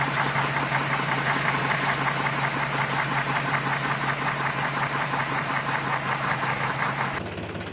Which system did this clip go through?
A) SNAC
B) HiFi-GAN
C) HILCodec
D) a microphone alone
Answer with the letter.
D